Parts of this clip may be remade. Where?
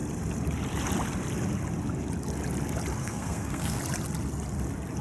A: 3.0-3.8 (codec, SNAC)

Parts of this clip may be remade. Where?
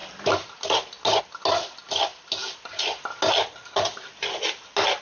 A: none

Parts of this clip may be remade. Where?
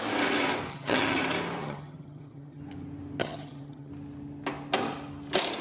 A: 0.7-1.2 (vocoder, HiFi-GAN); 1.6-2.6; 3.2-3.9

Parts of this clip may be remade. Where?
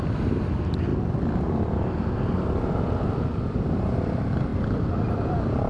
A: 0.0-0.9 (vocoder, BigVGAN v2); 3.2-4.5; 5.1-5.7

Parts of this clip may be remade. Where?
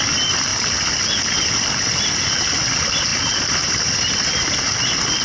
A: 3.1-4.1 (vocoder, BigVGAN v2)